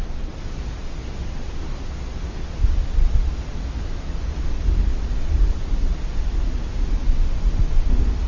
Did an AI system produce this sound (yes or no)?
no